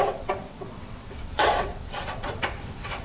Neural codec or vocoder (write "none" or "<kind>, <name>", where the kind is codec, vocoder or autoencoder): vocoder, WaveNeXt